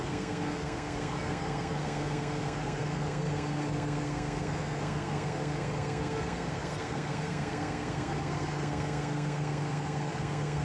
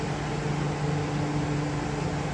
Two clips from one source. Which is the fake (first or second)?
first